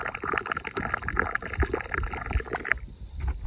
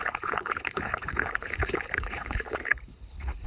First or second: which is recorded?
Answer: first